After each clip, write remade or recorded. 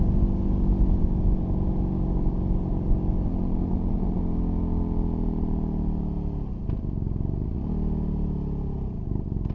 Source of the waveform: recorded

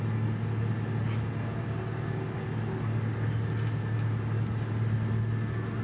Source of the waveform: recorded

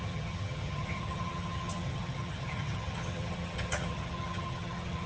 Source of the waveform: remade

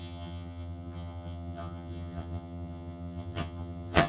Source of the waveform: remade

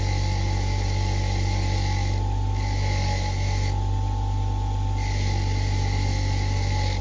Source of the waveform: recorded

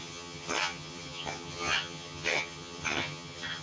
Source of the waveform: remade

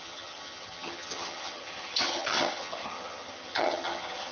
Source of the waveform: remade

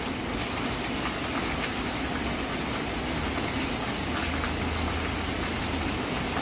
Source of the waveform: recorded